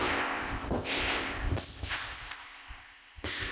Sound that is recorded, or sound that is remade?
remade